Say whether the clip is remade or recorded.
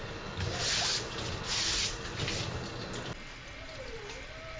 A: recorded